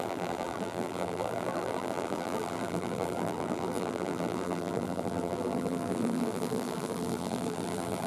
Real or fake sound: fake